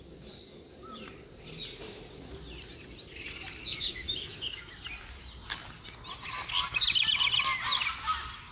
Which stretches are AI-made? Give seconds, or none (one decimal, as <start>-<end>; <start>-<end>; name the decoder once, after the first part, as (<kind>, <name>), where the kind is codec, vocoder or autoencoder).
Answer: 3.6-4.7 (autoencoder, DAC-VAE)

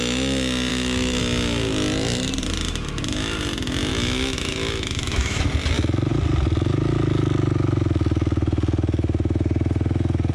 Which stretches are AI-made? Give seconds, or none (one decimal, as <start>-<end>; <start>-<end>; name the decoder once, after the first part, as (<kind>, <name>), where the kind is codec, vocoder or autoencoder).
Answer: 0.7-1.2 (autoencoder, DAC-VAE); 3.9-5.4

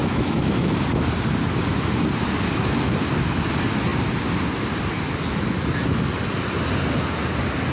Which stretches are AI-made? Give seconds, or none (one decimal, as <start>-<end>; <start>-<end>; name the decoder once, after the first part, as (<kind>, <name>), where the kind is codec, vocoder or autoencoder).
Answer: 0.0-0.7 (autoencoder, DAC-VAE)

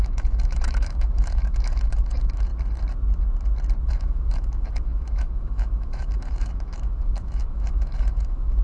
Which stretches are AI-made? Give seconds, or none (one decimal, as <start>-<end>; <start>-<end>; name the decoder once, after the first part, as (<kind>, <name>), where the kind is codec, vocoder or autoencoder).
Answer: 0.0-2.5 (autoencoder, DAC-VAE); 3.9-8.6

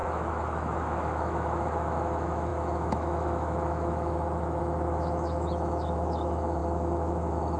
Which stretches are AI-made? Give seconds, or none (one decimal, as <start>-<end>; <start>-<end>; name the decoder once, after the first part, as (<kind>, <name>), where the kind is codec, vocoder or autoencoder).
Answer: 0.0-7.6 (autoencoder, DAC-VAE)

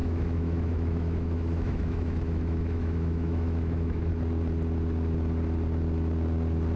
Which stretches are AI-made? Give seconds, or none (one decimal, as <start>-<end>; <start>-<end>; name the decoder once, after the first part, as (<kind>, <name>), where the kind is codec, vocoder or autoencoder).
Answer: 0.0-4.1 (autoencoder, DAC-VAE)

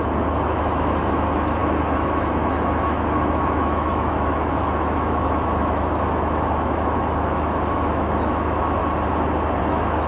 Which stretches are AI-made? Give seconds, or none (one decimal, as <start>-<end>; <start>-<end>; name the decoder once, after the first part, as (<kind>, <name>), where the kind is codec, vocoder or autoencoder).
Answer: 0.0-8.8 (autoencoder, DAC-VAE); 9.6-10.1

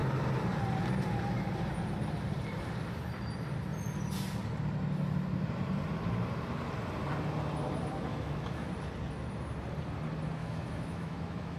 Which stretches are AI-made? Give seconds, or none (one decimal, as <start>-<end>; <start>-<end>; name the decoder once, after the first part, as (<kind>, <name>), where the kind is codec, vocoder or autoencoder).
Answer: 8.1-8.7 (autoencoder, DAC-VAE); 10.4-11.6